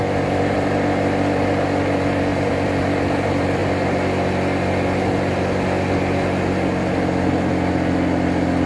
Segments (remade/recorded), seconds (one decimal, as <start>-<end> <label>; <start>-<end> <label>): 0.0-3.6 remade; 3.6-8.7 recorded